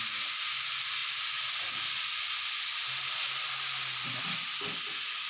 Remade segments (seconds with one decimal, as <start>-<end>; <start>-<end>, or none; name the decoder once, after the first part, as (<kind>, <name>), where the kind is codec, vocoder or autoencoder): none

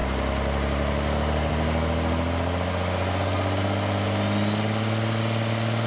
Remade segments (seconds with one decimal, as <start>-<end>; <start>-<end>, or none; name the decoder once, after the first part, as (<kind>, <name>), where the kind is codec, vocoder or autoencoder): none

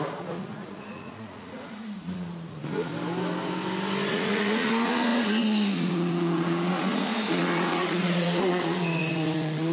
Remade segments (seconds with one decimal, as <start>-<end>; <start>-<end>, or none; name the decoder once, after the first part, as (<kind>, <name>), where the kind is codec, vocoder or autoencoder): 0.0-2.9 (vocoder, Vocos); 4.1-9.7

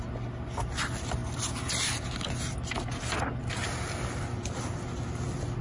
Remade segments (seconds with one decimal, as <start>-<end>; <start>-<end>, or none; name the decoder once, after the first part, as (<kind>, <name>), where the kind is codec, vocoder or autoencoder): none